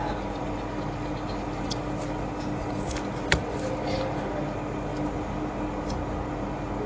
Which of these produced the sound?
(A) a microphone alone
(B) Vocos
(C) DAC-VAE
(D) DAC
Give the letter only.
A